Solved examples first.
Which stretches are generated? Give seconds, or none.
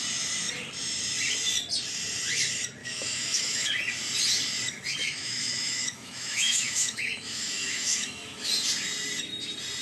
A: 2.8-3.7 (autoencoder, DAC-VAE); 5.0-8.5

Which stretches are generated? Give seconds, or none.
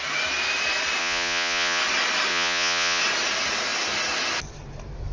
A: 1.0-1.8 (vocoder, Vocos); 2.3-3.0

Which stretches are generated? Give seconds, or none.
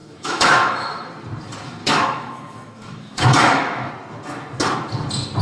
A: 0.0-1.1 (autoencoder, DAC-VAE); 1.8-3.9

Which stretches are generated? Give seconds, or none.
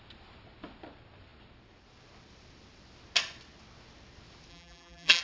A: 4.5-5.2 (vocoder, BigVGAN v2)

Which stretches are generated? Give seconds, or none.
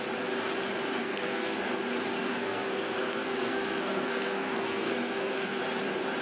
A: 1.0-1.7 (codec, SNAC); 2.3-5.6